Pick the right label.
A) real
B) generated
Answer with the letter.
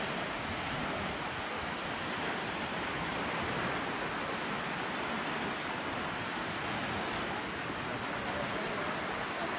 A